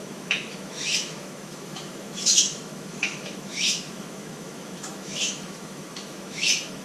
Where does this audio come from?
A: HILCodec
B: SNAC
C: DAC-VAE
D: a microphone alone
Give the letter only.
C